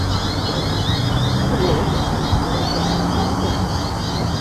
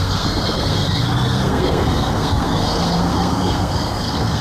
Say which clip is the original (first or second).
first